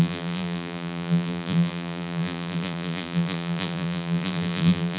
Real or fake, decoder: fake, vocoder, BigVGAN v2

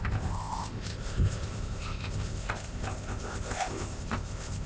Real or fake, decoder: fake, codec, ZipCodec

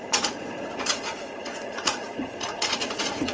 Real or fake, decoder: fake, vocoder, Vocos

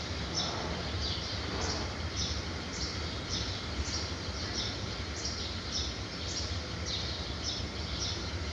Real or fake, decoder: fake, vocoder, BigVGAN v2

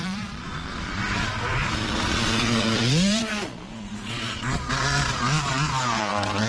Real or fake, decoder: fake, vocoder, Vocos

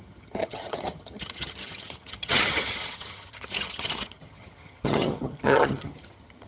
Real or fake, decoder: fake, vocoder, HiFi-GAN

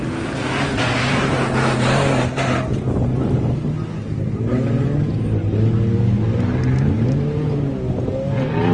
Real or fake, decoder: real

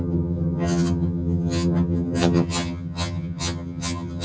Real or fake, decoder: fake, vocoder, HiFi-GAN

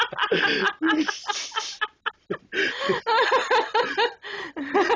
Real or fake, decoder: real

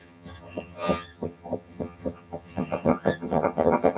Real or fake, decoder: fake, vocoder, HiFi-GAN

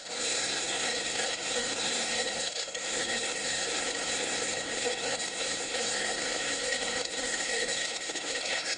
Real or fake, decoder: fake, codec, SNAC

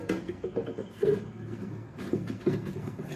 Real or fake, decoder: fake, codec, SNAC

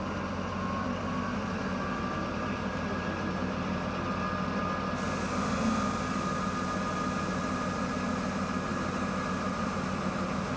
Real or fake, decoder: real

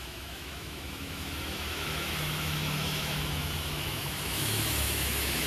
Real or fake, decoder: fake, autoencoder, DAC-VAE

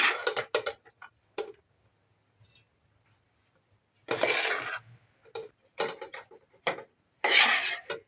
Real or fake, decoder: real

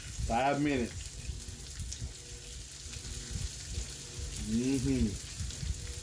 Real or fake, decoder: real